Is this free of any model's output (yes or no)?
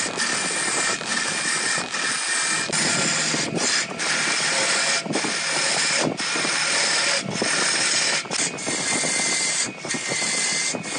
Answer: yes